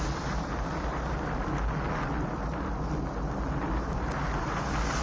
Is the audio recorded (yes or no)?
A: yes